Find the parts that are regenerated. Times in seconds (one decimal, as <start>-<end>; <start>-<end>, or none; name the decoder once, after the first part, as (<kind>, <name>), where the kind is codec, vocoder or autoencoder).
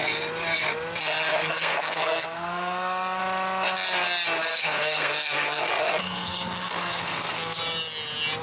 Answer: 1.5-3.2 (codec, SNAC); 4.5-5.6; 6.0-7.6